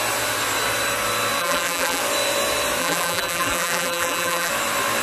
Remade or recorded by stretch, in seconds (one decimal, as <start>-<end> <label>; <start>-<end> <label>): 0.0-1.4 recorded; 1.4-2.0 remade; 2.0-2.8 recorded; 2.8-4.5 remade; 4.5-5.0 recorded